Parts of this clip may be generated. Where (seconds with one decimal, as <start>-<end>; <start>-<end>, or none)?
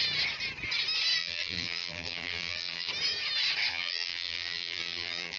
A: 1.2-2.9; 3.7-5.4